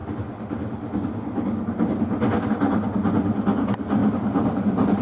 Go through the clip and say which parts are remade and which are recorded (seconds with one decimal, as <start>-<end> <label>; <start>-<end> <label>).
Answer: 0.0-4.0 recorded; 4.0-5.0 remade